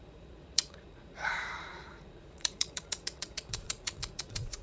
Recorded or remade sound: remade